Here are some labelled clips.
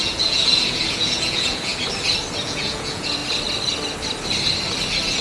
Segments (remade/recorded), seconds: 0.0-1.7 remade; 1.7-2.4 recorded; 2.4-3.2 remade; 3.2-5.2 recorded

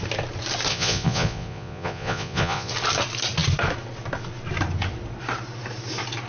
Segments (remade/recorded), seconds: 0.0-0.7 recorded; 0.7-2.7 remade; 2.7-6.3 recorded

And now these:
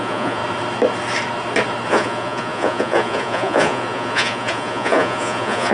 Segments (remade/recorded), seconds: 0.0-0.4 remade; 0.4-1.9 recorded; 1.9-5.7 remade

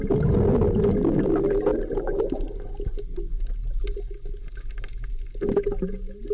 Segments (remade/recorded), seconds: 0.0-6.3 recorded

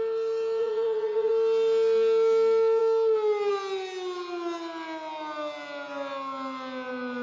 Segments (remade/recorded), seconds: 0.0-0.6 recorded; 0.6-1.3 remade; 1.3-7.2 recorded